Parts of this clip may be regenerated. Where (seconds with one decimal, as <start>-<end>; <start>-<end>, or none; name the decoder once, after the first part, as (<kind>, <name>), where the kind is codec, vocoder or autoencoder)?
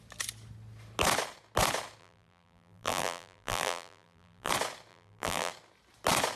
2.0-4.5 (vocoder, BigVGAN v2); 4.9-5.5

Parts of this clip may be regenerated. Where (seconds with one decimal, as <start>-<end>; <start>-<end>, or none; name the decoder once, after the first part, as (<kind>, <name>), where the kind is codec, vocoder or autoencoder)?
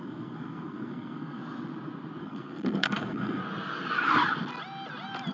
0.0-1.4 (codec, SNAC); 2.2-3.4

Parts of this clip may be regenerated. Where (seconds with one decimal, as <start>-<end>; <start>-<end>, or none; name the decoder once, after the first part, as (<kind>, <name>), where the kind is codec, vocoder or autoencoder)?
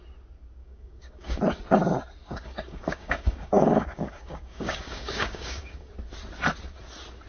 0.6-1.4 (codec, DAC); 2.2-5.9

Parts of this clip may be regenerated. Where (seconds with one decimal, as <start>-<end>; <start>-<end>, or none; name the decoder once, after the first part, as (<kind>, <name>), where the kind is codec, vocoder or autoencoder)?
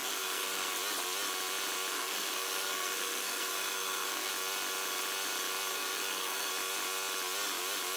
0.0-0.7 (codec, SNAC); 1.9-4.3; 5.7-6.5